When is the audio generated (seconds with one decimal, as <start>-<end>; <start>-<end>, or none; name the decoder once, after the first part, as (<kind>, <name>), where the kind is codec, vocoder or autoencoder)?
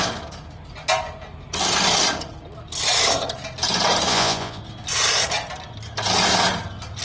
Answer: 4.1-4.6 (vocoder, Vocos)